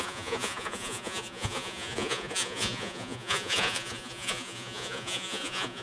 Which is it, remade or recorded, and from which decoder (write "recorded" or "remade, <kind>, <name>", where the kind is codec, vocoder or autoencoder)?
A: remade, vocoder, Vocos